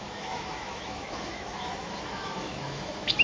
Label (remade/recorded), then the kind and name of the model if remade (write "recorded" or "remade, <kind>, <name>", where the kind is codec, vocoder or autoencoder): remade, autoencoder, DAC-VAE